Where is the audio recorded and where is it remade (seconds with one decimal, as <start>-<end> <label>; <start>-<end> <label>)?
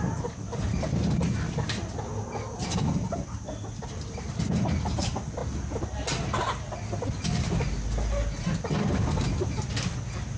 0.0-10.4 recorded